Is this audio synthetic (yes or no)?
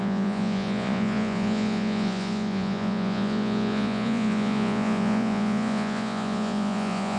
yes